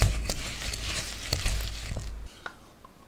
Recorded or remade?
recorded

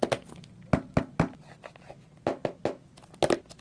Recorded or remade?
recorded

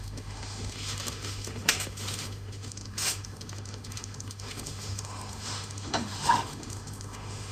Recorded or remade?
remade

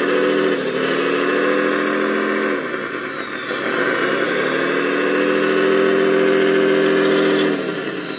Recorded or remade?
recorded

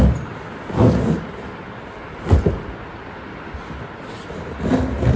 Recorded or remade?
recorded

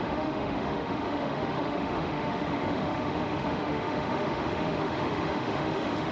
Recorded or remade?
remade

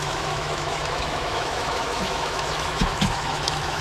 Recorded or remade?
remade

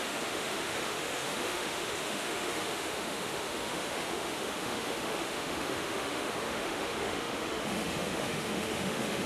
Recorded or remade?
remade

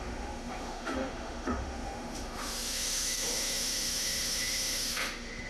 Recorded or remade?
remade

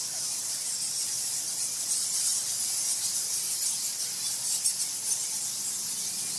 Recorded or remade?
recorded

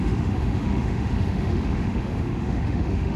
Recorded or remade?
remade